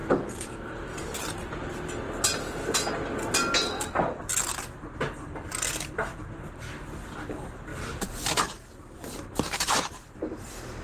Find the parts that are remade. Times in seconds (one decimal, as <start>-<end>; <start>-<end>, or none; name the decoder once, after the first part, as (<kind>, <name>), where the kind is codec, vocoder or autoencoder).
0.0-1.7 (vocoder, BigVGAN v2); 3.7-4.2; 7.7-8.4